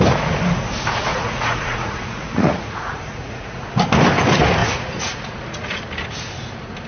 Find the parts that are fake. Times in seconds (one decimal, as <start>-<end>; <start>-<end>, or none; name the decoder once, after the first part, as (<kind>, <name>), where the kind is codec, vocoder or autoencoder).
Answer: 1.1-3.6 (vocoder, Vocos); 4.6-5.8